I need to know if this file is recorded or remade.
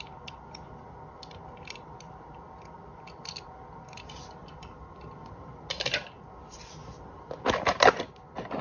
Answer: recorded